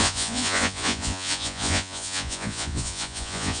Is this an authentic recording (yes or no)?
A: no